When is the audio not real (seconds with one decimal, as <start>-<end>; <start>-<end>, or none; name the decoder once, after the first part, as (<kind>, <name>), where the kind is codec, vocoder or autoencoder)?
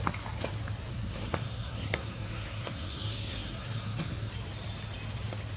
0.9-4.3 (codec, SNAC)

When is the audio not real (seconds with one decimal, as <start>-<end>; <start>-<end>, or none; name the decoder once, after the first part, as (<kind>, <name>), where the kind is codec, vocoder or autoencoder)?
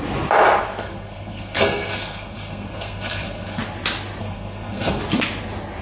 0.8-3.6 (codec, SNAC); 4.2-5.0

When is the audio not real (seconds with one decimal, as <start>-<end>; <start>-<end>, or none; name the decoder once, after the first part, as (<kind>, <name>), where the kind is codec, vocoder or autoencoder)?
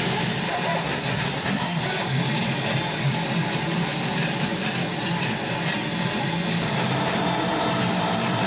0.8-1.8 (codec, SNAC)